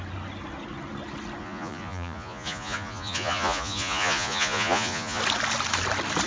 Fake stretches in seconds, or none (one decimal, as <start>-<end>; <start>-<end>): 1.4-5.2